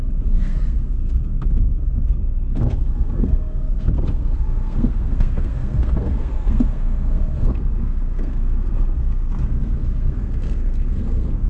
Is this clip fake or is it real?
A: fake